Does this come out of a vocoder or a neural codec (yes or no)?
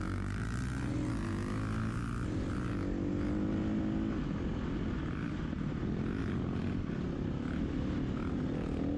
no